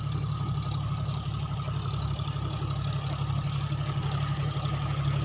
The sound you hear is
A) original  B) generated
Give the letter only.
A